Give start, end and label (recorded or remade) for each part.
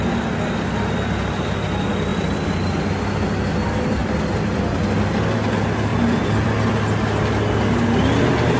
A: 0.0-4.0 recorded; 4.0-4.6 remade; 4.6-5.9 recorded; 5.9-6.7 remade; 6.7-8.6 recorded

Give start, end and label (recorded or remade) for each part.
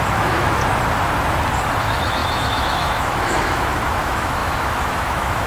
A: 0.0-0.6 remade; 0.6-1.8 recorded; 1.8-5.5 remade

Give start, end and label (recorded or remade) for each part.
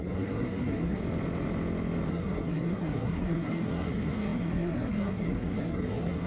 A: 0.0-1.0 remade; 1.0-2.1 recorded; 2.1-6.3 remade